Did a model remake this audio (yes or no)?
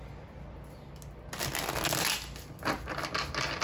no